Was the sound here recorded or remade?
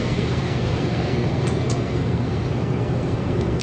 remade